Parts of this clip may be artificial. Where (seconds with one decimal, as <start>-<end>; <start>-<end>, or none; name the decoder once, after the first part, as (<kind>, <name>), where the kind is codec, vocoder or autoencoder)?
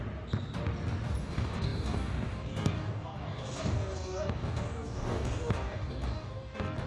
1.2-6.9 (codec, DAC)